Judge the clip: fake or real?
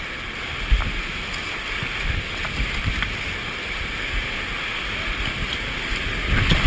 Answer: real